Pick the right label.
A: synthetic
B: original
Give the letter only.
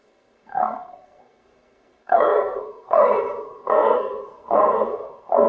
A